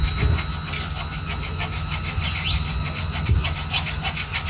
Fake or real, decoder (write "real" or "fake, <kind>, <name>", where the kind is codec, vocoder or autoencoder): real